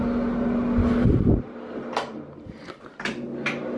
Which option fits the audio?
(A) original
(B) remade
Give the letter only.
A